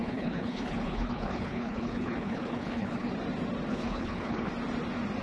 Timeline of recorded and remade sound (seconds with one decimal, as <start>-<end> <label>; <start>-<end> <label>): 0.0-3.1 remade; 3.1-3.7 recorded; 3.7-4.5 remade; 4.5-5.2 recorded